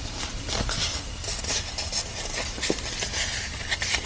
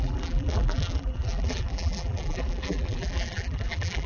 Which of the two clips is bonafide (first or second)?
first